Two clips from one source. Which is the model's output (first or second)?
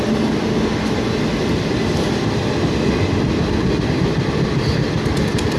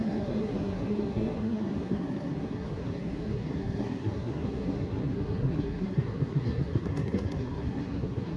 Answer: second